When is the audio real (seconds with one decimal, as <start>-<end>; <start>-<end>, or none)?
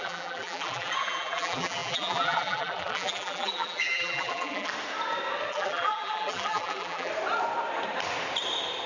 4.7-5.5; 7.1-8.9